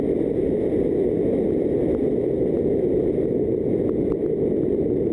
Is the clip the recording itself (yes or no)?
yes